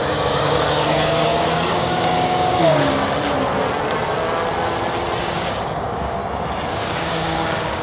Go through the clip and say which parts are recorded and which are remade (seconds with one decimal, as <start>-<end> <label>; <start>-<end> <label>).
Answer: 0.0-2.9 remade; 2.9-5.2 recorded; 5.2-6.2 remade; 6.2-6.7 recorded; 6.7-7.8 remade